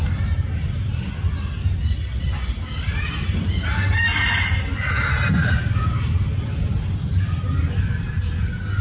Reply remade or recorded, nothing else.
recorded